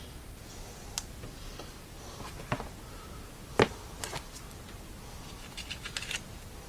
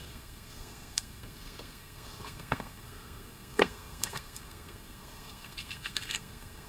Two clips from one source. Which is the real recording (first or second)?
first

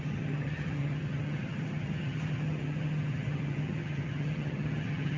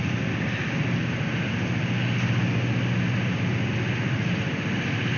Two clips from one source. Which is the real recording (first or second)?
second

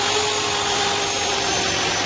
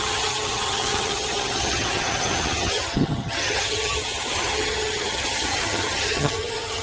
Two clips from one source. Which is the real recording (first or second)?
first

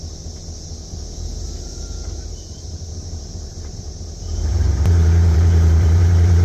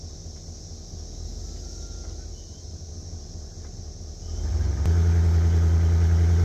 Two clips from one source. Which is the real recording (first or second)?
second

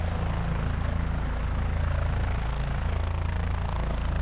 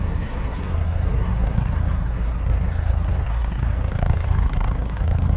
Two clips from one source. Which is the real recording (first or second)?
first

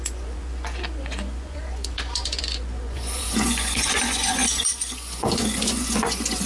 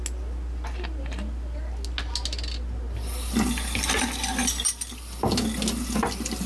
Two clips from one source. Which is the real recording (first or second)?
second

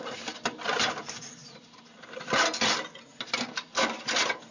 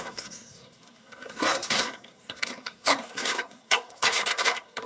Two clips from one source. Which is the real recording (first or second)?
first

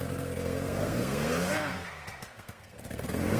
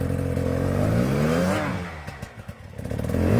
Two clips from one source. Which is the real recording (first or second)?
second